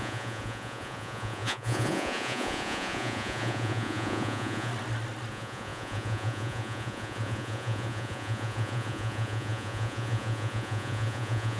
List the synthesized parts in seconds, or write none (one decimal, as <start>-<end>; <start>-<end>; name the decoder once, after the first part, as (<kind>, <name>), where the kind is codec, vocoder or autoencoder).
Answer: 0.0-4.7 (vocoder, Vocos); 5.3-11.6